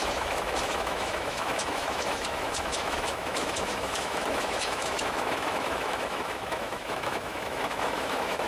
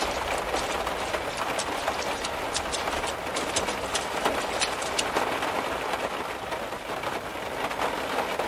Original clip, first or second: second